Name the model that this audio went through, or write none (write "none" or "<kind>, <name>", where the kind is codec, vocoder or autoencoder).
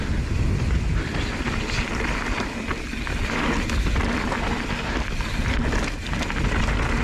none